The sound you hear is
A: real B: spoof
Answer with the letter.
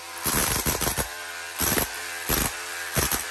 A